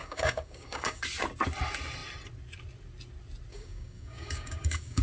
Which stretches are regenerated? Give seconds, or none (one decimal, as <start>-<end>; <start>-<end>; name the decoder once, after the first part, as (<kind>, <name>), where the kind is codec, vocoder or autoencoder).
0.0-1.0 (codec, DAC); 3.5-5.0

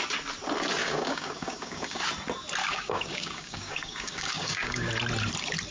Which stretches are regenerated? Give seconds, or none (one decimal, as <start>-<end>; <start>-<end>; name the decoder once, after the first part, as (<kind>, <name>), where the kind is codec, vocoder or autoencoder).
0.8-2.0 (codec, DAC); 2.6-4.9

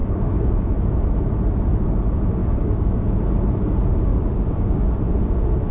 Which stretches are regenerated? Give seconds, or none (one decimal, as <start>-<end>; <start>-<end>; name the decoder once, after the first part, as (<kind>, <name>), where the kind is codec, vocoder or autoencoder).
0.0-0.7 (codec, DAC); 2.4-3.1; 4.1-5.0